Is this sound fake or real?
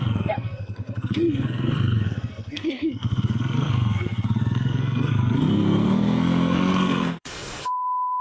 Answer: fake